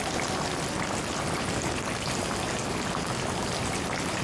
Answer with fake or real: real